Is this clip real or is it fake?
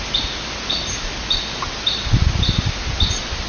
real